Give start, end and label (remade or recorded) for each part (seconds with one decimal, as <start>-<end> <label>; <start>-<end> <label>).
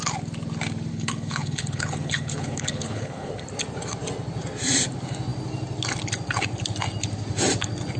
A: 0.0-0.9 recorded; 0.9-3.3 remade; 3.3-8.0 recorded